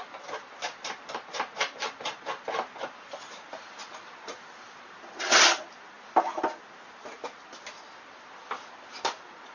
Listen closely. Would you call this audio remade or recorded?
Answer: recorded